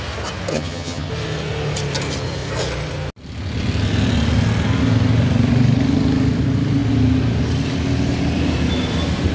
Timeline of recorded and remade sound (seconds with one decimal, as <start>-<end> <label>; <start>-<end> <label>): 0.0-0.5 recorded; 0.5-1.1 remade; 1.1-9.3 recorded